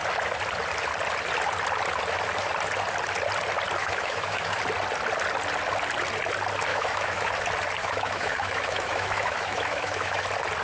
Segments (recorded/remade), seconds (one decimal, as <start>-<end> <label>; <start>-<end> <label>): 0.0-3.8 recorded; 3.8-4.6 remade; 4.6-6.7 recorded; 6.7-7.3 remade; 7.3-7.8 recorded; 7.8-10.2 remade; 10.2-10.6 recorded